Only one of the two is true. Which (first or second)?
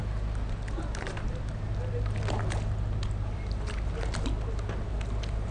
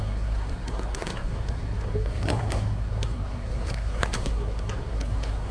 first